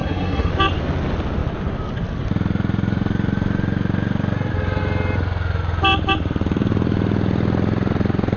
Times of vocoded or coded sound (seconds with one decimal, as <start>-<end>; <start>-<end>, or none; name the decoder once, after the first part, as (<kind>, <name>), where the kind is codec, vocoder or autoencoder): 0.0-0.5 (codec, SNAC)

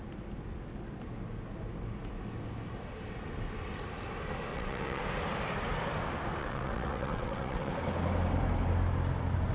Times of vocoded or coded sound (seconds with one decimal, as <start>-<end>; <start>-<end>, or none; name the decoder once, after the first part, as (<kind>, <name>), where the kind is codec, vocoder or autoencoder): 4.5-5.0 (vocoder, WaveNeXt); 6.4-7.7

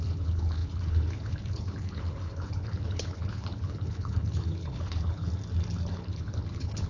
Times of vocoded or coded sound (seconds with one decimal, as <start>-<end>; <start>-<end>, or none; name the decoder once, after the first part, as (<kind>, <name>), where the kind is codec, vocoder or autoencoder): 0.0-5.3 (codec, HILCodec); 5.9-6.9

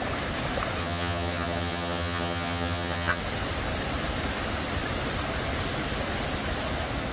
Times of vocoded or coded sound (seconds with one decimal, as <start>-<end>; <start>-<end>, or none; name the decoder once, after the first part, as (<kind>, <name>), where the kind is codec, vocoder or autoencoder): 0.8-3.2 (vocoder, HiFi-GAN)

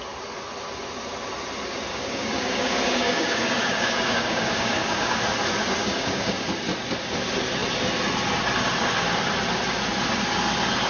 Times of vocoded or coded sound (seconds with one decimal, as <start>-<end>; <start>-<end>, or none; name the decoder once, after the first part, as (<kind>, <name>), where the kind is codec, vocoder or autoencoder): 1.9-5.2 (codec, DAC); 5.8-6.5

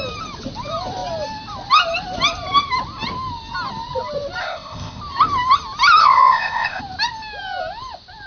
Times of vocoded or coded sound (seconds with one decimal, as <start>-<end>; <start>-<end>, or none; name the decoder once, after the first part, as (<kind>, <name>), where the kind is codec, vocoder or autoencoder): 4.4-5.0 (codec, ZipCodec); 6.0-6.8